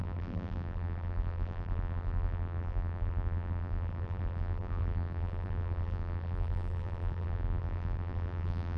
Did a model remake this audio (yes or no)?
yes